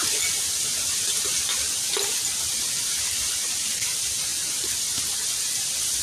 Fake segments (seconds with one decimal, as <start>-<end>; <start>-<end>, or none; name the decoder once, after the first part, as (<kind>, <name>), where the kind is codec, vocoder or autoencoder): none